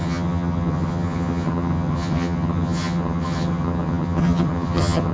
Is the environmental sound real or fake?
fake